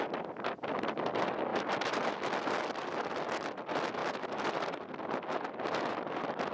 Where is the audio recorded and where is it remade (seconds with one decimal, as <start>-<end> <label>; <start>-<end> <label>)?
0.0-6.5 recorded